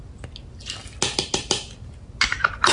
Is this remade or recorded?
recorded